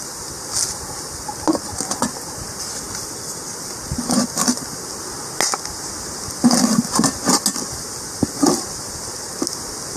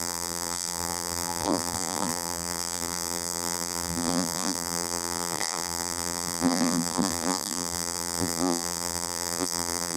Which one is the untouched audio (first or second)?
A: first